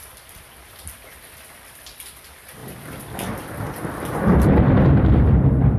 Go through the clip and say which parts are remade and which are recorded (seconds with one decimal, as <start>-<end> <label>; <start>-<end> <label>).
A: 0.0-5.8 remade